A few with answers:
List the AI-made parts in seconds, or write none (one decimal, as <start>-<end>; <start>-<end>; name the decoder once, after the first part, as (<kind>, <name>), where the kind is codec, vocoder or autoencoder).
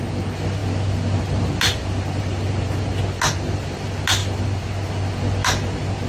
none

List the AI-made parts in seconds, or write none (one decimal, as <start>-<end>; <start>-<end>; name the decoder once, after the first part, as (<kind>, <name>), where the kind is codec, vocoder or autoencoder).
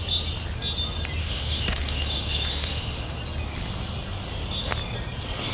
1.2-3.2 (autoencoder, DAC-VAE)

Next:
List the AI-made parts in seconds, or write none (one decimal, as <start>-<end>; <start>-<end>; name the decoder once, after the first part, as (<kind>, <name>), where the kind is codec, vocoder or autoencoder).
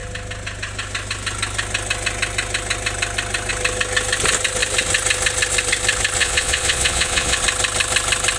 6.2-7.4 (vocoder, Vocos)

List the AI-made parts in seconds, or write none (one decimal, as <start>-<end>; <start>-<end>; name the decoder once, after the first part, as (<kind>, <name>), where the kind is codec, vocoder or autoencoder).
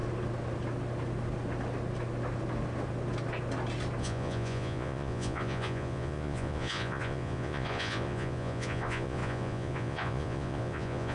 4.0-11.1 (vocoder, Vocos)